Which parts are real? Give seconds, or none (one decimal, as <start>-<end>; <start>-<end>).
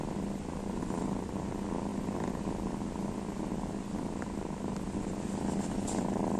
0.0-6.4